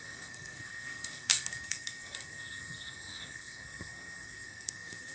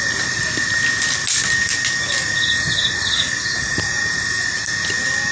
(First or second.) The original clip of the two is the second